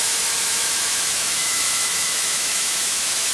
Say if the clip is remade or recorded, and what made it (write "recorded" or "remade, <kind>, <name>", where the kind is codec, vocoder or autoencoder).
remade, autoencoder, DAC-VAE